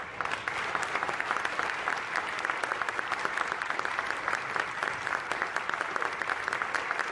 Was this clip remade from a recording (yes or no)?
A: no